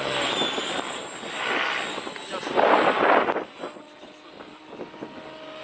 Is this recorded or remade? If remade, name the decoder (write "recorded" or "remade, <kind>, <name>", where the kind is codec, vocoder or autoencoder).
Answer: recorded